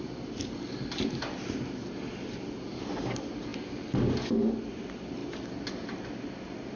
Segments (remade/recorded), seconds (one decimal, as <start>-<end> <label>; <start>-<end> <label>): 0.0-6.8 recorded